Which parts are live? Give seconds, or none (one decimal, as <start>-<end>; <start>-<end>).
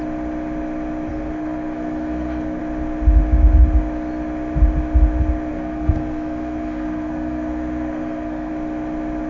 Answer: 0.0-1.1; 2.6-5.5; 8.5-9.3